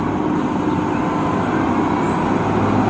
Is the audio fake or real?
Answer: real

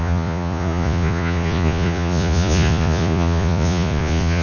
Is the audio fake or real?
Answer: fake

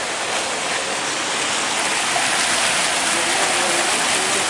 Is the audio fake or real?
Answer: real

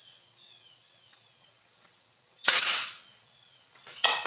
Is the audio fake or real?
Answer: fake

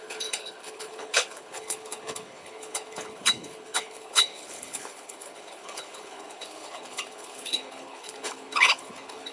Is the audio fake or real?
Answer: fake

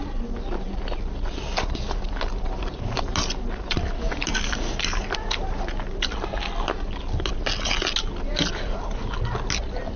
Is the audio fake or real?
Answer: real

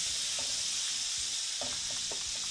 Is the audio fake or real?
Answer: real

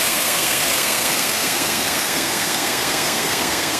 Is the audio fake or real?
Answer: fake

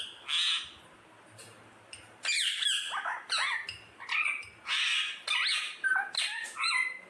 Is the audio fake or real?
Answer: real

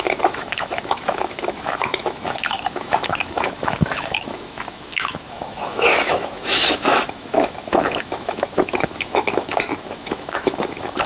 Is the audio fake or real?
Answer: fake